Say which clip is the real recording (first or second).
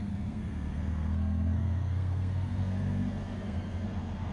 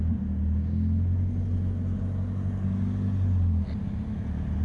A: second